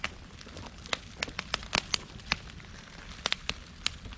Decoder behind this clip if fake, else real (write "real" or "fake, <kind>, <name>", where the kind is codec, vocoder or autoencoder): real